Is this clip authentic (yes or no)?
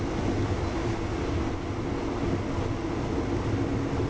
yes